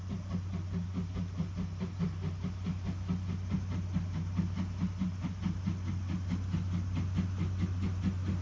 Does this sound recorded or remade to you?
recorded